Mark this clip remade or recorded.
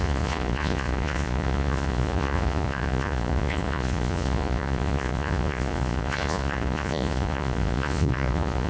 remade